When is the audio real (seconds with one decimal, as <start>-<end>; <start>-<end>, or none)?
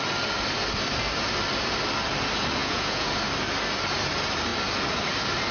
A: 0.0-2.6; 3.1-5.5